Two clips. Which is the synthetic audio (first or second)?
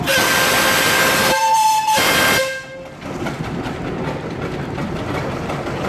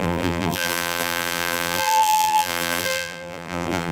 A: second